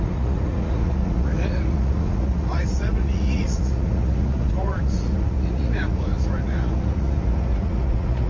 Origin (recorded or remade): remade